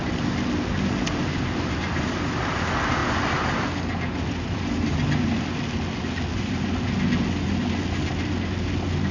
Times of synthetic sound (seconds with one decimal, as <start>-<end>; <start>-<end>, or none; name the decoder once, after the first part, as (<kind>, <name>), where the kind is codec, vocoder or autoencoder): none